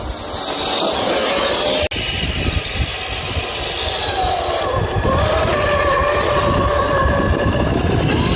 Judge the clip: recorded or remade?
recorded